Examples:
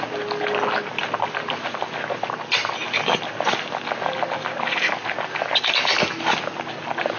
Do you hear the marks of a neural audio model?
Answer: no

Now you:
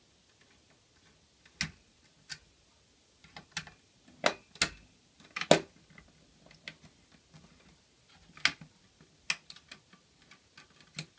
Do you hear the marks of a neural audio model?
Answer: no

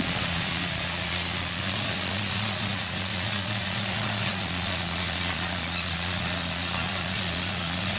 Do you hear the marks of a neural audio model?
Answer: yes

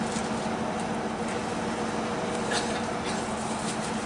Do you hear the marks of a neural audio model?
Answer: no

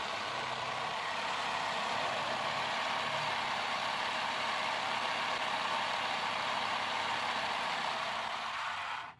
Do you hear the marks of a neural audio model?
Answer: yes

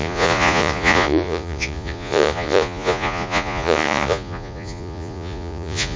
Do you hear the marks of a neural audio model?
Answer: yes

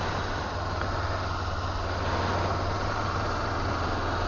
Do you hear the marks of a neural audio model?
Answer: no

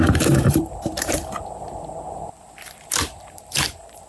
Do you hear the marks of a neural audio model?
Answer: yes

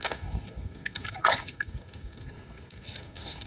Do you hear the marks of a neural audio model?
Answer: yes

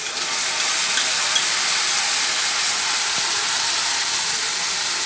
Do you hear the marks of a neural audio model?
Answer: no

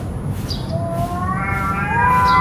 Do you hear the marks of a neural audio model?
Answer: no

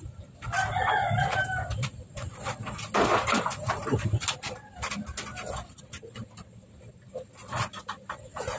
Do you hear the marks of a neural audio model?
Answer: no